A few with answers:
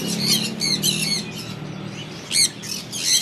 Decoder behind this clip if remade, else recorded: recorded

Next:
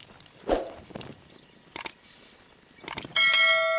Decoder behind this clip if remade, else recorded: recorded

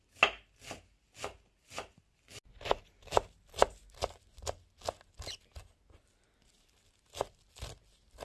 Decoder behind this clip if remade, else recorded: recorded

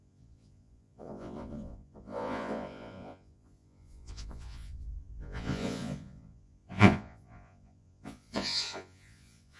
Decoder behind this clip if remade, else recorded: remade, vocoder, Vocos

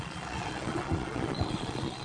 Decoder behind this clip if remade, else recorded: remade, vocoder, Vocos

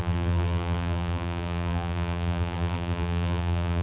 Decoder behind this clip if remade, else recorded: remade, vocoder, BigVGAN v2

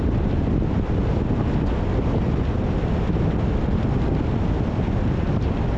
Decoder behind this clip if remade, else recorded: recorded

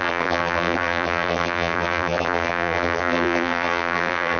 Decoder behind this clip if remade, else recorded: remade, vocoder, BigVGAN v2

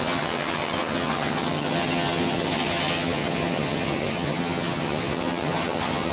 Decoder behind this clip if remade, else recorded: remade, vocoder, HiFi-GAN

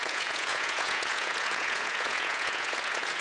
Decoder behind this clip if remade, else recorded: remade, vocoder, Vocos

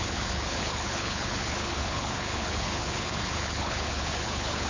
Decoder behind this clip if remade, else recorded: remade, codec, HILCodec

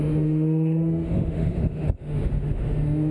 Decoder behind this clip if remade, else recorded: remade, autoencoder, DAC-VAE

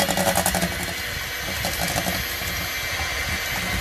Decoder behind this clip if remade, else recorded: recorded